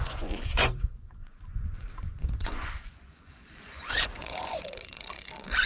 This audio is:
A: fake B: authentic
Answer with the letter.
A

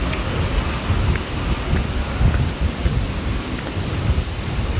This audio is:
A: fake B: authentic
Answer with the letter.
B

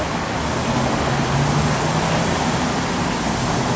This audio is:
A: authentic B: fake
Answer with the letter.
A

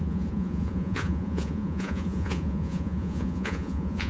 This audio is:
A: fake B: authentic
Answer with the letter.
A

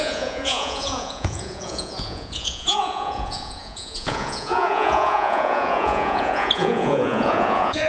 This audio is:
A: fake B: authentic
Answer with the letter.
A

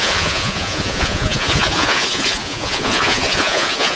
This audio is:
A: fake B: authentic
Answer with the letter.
A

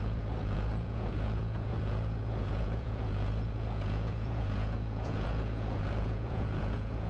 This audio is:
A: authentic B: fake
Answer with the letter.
B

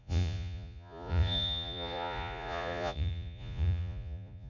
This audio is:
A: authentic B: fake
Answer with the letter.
B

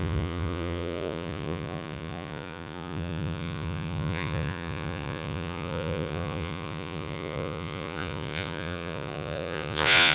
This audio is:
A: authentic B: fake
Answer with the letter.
B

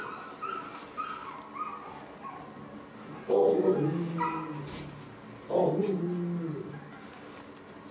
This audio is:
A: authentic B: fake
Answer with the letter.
A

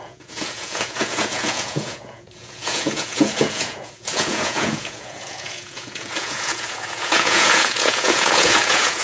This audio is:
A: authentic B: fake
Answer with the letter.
B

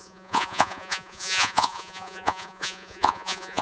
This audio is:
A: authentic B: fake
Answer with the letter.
B